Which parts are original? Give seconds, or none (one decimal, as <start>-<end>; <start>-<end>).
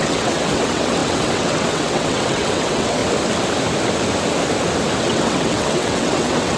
3.0-5.0